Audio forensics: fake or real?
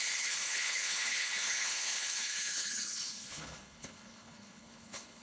fake